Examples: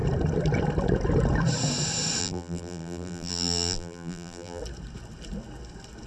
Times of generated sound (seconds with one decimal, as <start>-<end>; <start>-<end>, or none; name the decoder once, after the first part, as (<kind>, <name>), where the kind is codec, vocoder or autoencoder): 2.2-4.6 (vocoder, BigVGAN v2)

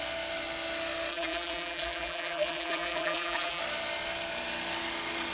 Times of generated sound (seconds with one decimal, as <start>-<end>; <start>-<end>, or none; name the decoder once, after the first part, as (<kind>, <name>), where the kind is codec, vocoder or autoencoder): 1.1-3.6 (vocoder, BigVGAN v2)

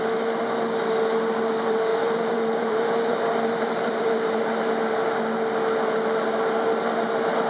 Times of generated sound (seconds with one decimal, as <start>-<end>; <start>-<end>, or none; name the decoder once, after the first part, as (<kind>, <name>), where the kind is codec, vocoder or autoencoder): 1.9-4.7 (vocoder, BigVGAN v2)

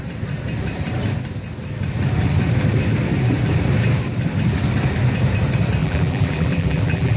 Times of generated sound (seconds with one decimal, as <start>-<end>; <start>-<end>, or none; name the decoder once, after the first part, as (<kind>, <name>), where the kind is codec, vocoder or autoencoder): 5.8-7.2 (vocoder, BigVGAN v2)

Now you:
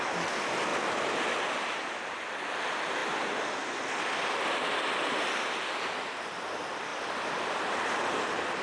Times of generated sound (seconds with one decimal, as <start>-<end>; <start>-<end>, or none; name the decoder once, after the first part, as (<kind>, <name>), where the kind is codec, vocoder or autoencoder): 6.9-7.8 (vocoder, BigVGAN v2)